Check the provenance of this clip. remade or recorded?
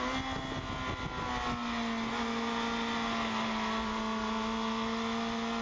recorded